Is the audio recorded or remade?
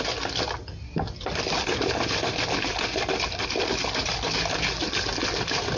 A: recorded